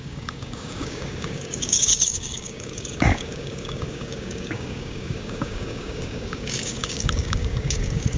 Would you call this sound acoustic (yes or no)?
no